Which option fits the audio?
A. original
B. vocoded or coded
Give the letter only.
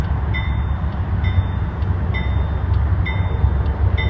A